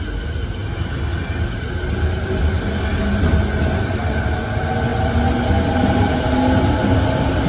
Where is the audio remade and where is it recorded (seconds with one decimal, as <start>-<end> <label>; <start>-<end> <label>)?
0.0-7.5 recorded